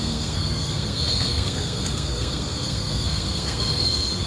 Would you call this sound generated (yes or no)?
yes